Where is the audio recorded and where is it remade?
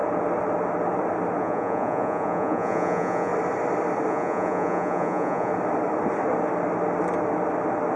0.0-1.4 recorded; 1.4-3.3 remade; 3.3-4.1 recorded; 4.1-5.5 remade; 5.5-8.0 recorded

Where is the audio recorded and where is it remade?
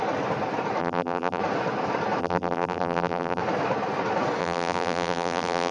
0.0-0.8 recorded; 0.8-1.4 remade; 1.4-2.2 recorded; 2.2-3.4 remade; 3.4-4.4 recorded; 4.4-5.7 remade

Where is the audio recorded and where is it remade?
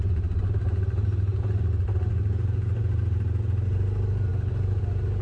0.0-5.2 recorded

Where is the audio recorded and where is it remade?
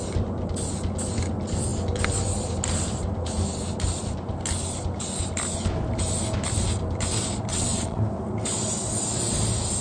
0.0-7.5 recorded; 7.5-8.0 remade; 8.0-9.8 recorded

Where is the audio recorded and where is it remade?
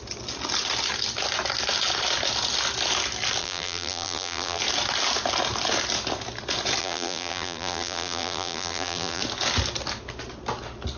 0.0-3.4 recorded; 3.4-4.6 remade; 4.6-6.8 recorded; 6.8-9.2 remade; 9.2-11.0 recorded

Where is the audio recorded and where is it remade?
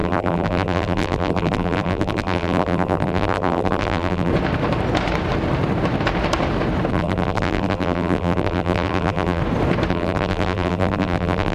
0.0-4.3 remade; 4.3-6.9 recorded; 6.9-9.4 remade; 9.4-9.9 recorded; 9.9-11.5 remade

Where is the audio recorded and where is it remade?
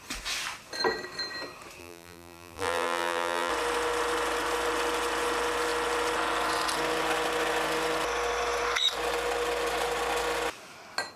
0.0-1.8 recorded; 1.8-3.5 remade; 3.5-11.2 recorded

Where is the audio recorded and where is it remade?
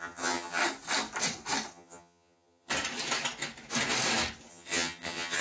0.0-0.6 remade; 0.6-1.7 recorded; 1.7-2.7 remade; 2.7-4.5 recorded; 4.5-5.4 remade